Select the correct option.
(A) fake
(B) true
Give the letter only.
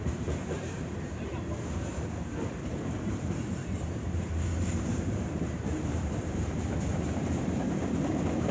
A